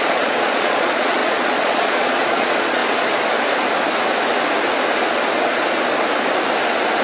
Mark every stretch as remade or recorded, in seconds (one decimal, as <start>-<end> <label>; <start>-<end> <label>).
0.0-2.8 remade; 2.8-7.0 recorded